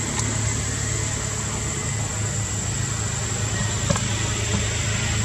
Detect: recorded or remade recorded